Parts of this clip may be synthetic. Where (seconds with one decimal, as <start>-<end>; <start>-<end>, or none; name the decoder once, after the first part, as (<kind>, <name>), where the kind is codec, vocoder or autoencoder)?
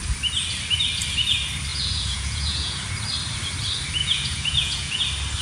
1.7-2.8 (vocoder, Vocos); 4.0-5.0